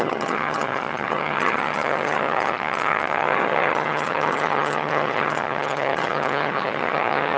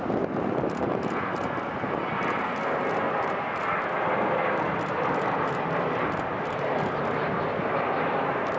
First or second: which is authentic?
second